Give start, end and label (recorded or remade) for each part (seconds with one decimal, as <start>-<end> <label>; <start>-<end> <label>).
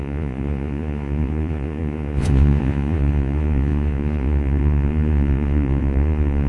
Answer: 0.0-6.5 remade